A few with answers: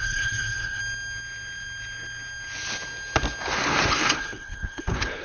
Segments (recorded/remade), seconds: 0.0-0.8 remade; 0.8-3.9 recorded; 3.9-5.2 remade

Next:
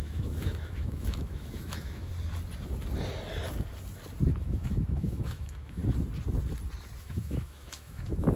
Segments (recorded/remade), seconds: 0.0-2.1 remade; 2.1-4.4 recorded; 4.4-5.8 remade; 5.8-7.0 recorded; 7.0-8.4 remade

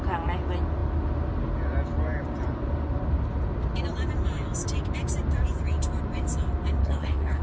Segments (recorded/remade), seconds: 0.0-6.8 recorded; 6.8-7.4 remade

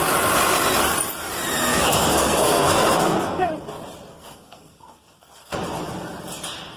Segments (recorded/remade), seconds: 0.0-1.7 recorded; 1.7-3.5 remade; 3.5-4.1 recorded; 4.1-5.6 remade; 5.6-6.8 recorded